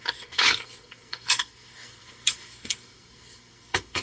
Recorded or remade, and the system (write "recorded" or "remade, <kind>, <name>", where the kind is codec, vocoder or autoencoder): remade, codec, SNAC